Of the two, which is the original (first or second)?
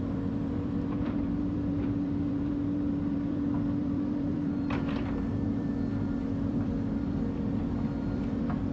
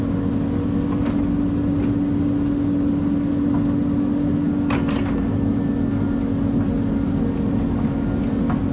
second